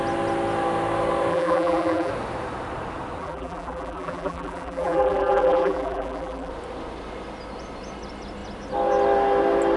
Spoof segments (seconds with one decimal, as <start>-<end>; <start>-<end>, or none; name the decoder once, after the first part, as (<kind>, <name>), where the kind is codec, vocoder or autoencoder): 1.3-2.1 (vocoder, BigVGAN v2); 3.2-6.5